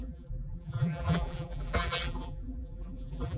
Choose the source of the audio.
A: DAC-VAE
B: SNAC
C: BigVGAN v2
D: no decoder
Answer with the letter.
C